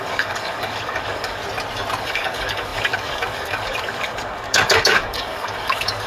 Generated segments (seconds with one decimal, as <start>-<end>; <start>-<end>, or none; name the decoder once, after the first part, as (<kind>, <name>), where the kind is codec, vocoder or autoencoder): 0.0-1.4 (codec, DAC); 2.0-6.1